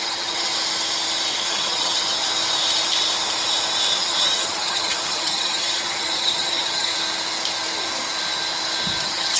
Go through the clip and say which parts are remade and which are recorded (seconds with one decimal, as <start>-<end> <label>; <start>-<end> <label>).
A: 0.0-0.5 remade; 0.5-1.3 recorded; 1.3-2.2 remade; 2.2-3.9 recorded; 3.9-6.9 remade; 6.9-9.0 recorded; 9.0-9.4 remade